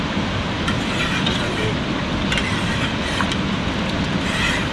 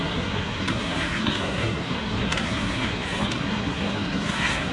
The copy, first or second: second